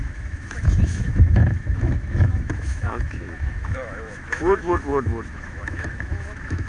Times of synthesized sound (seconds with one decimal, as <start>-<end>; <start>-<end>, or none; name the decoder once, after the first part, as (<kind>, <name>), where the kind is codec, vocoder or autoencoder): 0.0-6.7 (autoencoder, DAC-VAE)